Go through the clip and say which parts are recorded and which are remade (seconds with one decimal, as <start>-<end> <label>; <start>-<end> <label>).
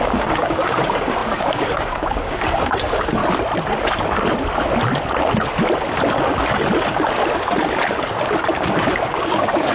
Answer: 0.0-3.2 remade; 3.2-8.5 recorded; 8.5-9.7 remade